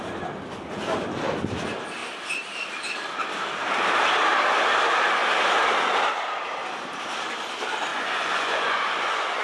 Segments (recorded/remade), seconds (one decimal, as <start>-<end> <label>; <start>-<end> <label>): 0.0-7.9 recorded; 7.9-9.4 remade